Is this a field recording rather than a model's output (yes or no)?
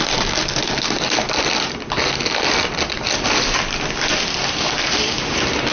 yes